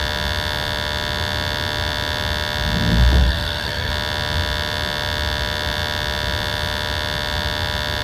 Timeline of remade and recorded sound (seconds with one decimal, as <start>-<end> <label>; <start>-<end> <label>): 0.0-3.2 recorded; 3.2-3.9 remade; 3.9-8.0 recorded